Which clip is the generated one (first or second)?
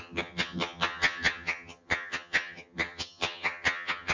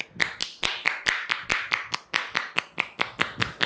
first